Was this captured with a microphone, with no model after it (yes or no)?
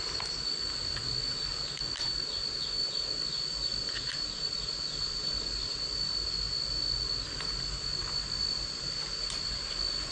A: yes